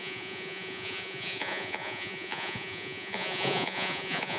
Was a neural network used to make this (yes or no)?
yes